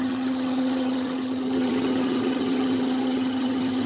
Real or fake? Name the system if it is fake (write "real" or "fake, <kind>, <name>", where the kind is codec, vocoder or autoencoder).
fake, vocoder, HiFi-GAN